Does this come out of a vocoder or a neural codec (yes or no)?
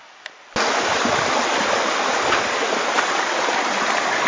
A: no